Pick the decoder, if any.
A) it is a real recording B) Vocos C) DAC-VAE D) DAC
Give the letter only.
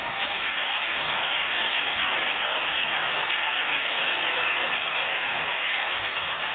D